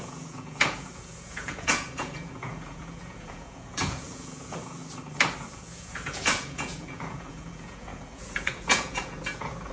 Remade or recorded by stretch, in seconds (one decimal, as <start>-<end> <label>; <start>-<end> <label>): 0.0-4.8 remade; 4.8-5.4 recorded; 5.4-9.7 remade